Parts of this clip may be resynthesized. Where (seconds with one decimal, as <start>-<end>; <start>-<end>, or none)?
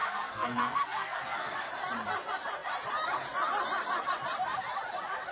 0.0-1.7